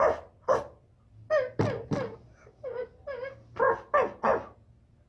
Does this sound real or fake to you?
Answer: real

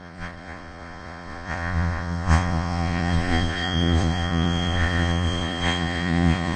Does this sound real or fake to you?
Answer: fake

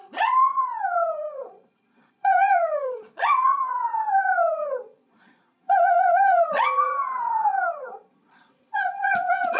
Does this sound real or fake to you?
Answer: fake